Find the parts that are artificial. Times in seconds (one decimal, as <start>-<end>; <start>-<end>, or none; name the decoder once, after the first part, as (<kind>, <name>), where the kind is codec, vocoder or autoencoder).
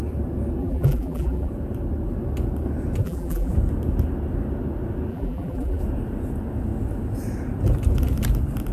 0.6-1.5 (vocoder, BigVGAN v2); 3.0-3.5; 5.1-5.8